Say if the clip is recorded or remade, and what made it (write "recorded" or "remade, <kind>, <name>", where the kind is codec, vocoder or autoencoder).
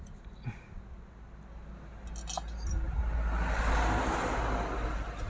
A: recorded